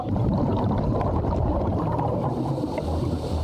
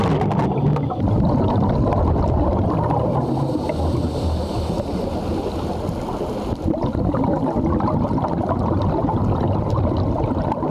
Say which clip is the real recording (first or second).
second